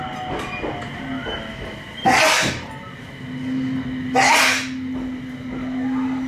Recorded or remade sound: recorded